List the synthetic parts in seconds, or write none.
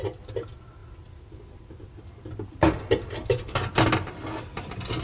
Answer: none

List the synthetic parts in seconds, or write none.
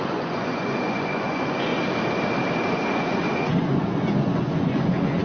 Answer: 0.0-1.7 (vocoder, Vocos); 2.6-5.2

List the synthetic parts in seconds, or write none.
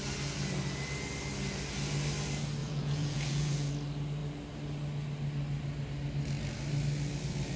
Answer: 2.6-3.7 (vocoder, Vocos)